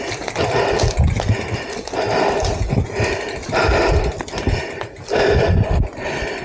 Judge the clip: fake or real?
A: real